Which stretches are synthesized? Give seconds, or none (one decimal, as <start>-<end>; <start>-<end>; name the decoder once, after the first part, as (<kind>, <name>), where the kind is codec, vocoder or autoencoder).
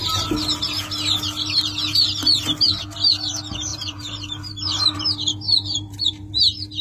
3.7-6.3 (vocoder, BigVGAN v2)